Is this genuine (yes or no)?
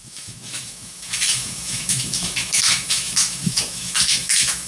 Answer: no